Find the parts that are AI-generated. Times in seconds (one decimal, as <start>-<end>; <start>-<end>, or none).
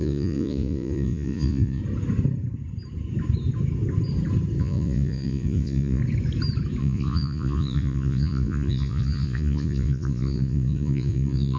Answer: 0.0-1.8; 4.6-6.0; 6.8-11.6